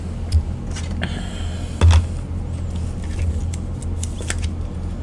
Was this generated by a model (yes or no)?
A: no